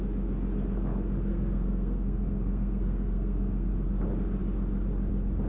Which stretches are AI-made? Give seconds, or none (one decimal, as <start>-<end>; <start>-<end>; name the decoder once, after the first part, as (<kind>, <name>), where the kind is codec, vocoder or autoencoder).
1.3-3.7 (codec, SNAC)